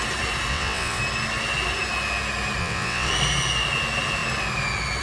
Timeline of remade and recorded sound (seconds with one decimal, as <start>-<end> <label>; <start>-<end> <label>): 0.0-0.5 recorded; 0.5-1.0 remade; 1.0-2.6 recorded; 2.6-3.1 remade; 3.1-5.0 recorded